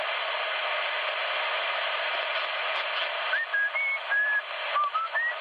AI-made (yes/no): no